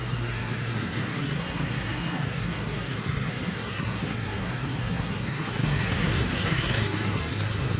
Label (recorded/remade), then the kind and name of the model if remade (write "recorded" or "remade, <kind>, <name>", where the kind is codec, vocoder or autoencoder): remade, codec, SNAC